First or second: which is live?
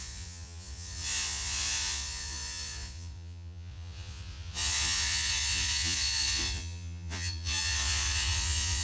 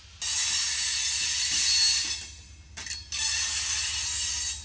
second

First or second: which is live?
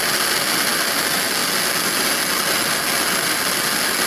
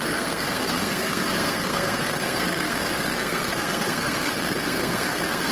first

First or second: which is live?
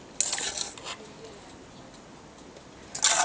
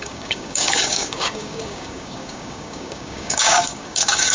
first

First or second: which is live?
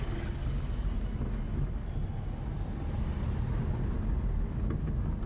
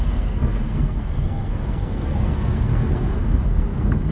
first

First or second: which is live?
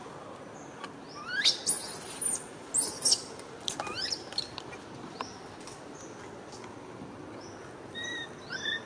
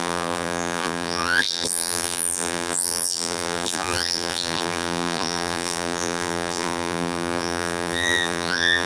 first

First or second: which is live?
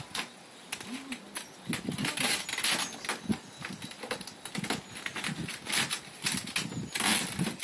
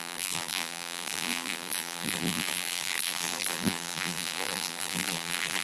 first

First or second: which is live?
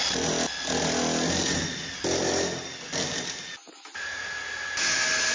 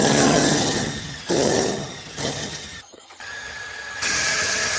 first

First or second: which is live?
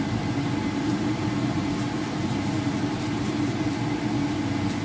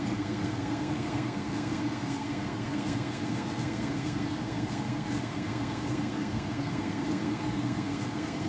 first